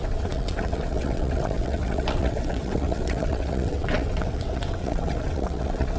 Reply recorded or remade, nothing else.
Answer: remade